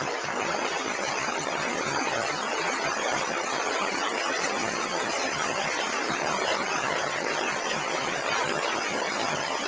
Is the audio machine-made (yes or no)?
yes